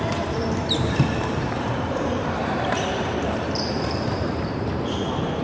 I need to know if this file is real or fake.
fake